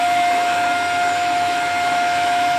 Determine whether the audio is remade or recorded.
remade